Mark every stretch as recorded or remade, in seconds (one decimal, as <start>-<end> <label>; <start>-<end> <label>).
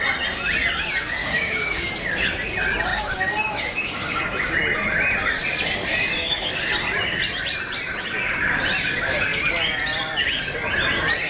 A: 0.0-1.2 recorded; 1.2-1.9 remade; 1.9-2.9 recorded; 2.9-4.2 remade; 4.2-6.2 recorded; 6.2-6.7 remade; 6.7-11.3 recorded